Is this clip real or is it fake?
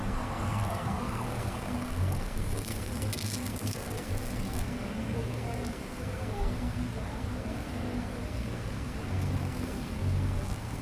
fake